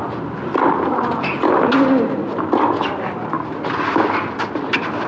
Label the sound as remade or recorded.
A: recorded